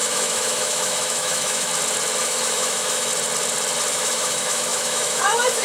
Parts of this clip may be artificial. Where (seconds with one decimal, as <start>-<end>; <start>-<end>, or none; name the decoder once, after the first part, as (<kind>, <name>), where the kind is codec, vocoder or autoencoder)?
0.0-1.7 (autoencoder, DAC-VAE); 2.2-3.1; 3.9-5.6